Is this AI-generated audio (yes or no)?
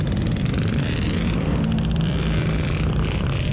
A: yes